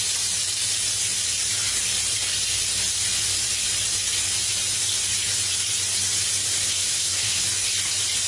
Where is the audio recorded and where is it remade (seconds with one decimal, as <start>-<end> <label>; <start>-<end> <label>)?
0.0-6.6 recorded; 6.6-7.4 remade; 7.4-8.3 recorded